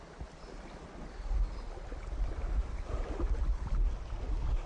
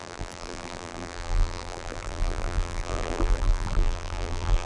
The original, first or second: first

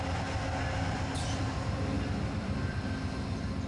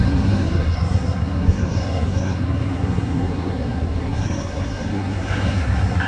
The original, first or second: first